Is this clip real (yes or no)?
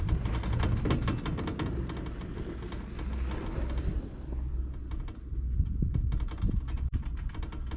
yes